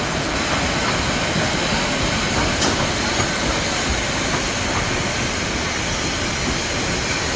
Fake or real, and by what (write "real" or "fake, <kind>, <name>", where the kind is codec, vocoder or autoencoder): real